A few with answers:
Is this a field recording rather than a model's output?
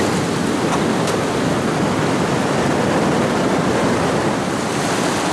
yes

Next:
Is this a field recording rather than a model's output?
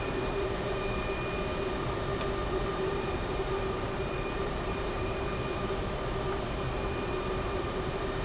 no